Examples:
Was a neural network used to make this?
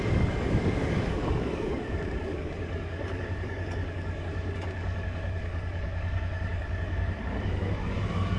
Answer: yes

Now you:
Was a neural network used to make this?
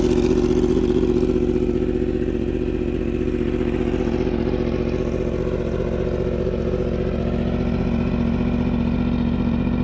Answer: no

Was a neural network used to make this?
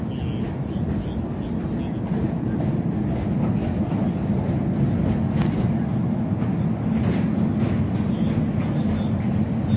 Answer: no